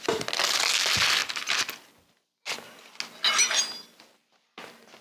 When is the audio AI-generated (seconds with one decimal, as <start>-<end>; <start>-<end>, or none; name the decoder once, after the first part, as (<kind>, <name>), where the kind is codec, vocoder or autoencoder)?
none